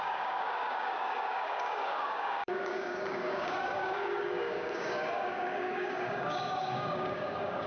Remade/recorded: remade